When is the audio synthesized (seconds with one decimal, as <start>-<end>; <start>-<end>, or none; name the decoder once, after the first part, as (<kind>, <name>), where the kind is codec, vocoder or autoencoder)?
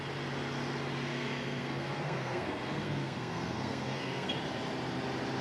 1.1-4.3 (codec, SNAC)